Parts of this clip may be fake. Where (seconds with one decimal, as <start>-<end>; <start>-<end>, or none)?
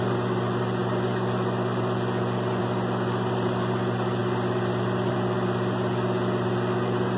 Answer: 0.0-0.8; 2.6-7.2